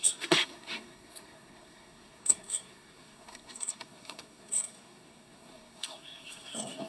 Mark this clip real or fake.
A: fake